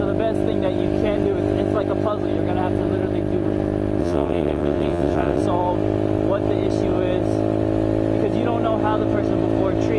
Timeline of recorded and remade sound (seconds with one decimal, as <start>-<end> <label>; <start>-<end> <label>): 0.0-4.0 recorded; 4.0-5.4 remade; 5.4-10.0 recorded